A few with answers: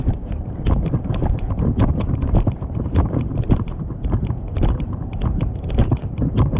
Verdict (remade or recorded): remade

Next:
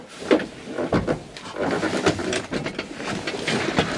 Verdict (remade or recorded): recorded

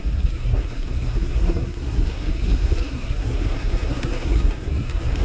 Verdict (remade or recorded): remade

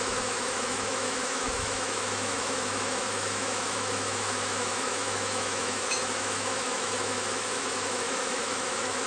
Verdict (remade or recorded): remade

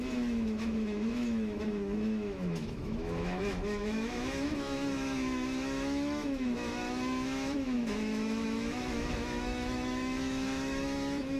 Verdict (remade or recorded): remade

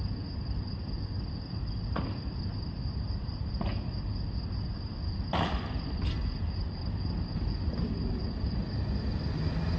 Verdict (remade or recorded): recorded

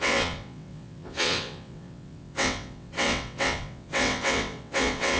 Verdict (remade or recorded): remade